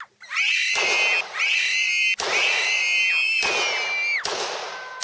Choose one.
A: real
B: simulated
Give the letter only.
A